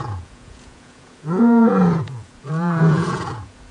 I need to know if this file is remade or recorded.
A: remade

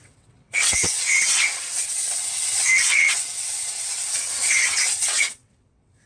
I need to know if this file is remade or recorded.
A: remade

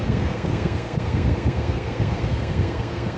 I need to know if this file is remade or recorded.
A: remade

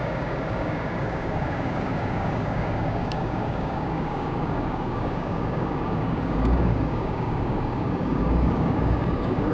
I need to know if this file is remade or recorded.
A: remade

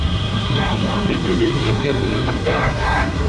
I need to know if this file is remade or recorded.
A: remade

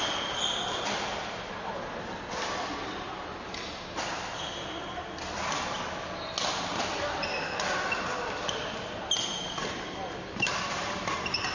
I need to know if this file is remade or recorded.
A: recorded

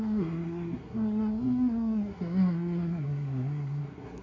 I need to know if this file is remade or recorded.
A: remade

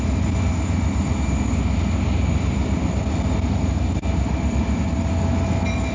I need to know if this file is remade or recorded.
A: recorded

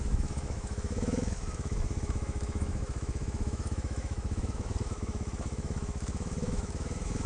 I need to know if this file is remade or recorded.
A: remade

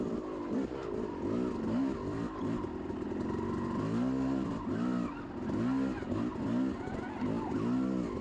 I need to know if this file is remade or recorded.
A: recorded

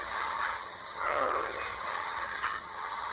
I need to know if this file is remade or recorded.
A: remade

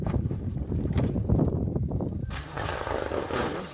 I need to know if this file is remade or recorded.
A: remade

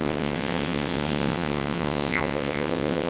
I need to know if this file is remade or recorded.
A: remade